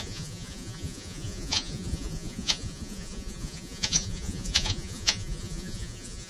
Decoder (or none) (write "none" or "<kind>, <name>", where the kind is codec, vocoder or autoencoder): vocoder, Vocos